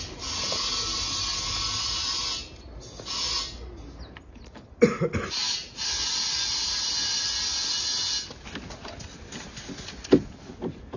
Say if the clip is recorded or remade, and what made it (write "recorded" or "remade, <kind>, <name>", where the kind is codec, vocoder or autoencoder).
recorded